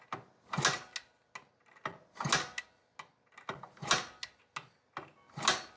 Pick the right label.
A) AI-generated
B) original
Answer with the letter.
B